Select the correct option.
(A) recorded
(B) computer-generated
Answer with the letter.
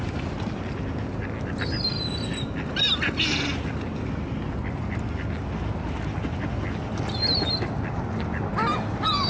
A